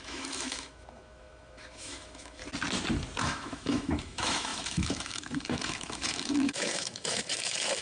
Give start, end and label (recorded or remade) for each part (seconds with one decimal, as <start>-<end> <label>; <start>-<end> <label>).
0.0-2.4 remade; 2.4-3.2 recorded; 3.2-7.8 remade